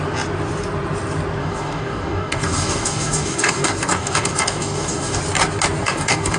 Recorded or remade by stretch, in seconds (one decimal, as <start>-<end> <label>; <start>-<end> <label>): 0.0-1.4 recorded; 1.4-5.2 remade; 5.2-5.8 recorded; 5.8-6.4 remade